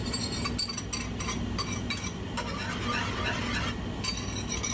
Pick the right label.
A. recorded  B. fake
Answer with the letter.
A